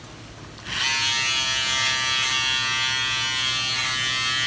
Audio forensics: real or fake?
real